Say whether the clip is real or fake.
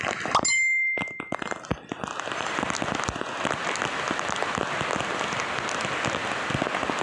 real